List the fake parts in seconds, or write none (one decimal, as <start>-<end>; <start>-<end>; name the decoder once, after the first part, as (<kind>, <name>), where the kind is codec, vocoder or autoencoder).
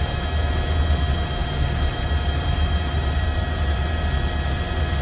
1.4-3.8 (vocoder, BigVGAN v2)